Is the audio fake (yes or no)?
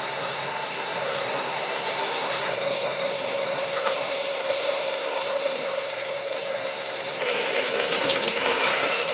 yes